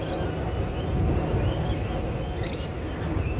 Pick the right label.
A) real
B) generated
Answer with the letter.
A